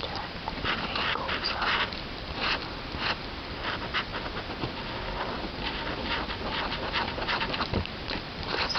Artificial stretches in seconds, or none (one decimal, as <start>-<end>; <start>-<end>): 0.0-4.1; 4.7-6.0; 6.5-8.8

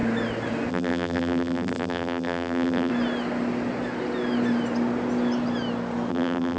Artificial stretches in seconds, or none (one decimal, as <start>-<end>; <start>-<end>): 0.7-2.9; 6.1-6.6

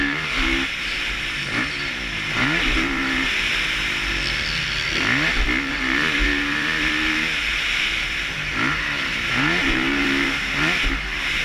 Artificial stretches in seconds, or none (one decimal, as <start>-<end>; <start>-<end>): 0.0-3.5; 5.7-11.4

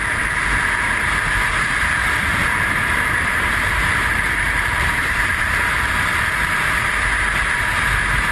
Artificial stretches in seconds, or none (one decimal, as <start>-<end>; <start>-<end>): 2.0-6.8

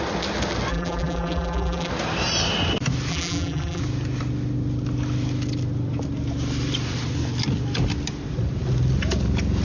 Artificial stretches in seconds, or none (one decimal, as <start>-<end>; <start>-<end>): 0.7-1.9; 3.1-3.8

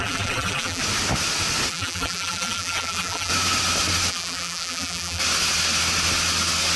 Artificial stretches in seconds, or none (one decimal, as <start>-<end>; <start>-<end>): 0.0-0.8; 1.7-3.3; 4.1-5.2

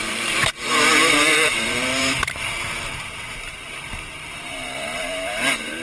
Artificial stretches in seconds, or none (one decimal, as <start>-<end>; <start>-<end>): 0.0-5.8

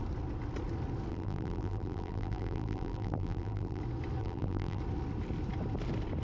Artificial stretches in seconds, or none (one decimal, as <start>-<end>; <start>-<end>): 1.1-3.8; 4.2-4.8